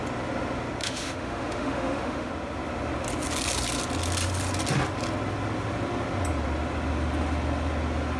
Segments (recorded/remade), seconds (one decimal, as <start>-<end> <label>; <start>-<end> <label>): 0.0-0.8 recorded; 0.8-2.3 remade; 2.3-8.2 recorded

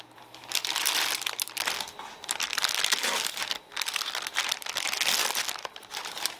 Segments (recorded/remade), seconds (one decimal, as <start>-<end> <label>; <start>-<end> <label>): 0.0-6.4 recorded

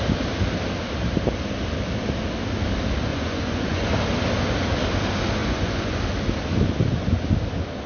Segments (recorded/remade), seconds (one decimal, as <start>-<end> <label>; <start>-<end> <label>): 0.0-3.1 recorded; 3.1-3.9 remade; 3.9-5.4 recorded; 5.4-6.0 remade; 6.0-7.9 recorded

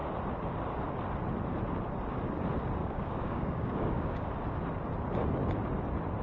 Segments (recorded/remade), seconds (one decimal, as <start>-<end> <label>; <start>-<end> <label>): 0.0-2.8 recorded; 2.8-4.3 remade; 4.3-6.2 recorded

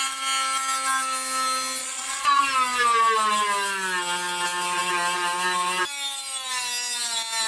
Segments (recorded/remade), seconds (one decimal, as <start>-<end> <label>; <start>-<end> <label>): 0.0-1.8 recorded; 1.8-2.4 remade; 2.4-7.5 recorded

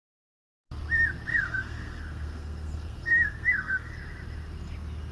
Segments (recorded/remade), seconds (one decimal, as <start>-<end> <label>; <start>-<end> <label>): 0.0-1.3 recorded; 1.3-3.9 remade; 3.9-5.1 recorded

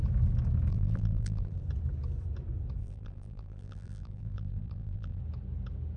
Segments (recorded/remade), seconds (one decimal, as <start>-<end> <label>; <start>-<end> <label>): 0.0-0.7 recorded; 0.7-1.6 remade; 1.6-2.8 recorded; 2.8-5.2 remade; 5.2-6.0 recorded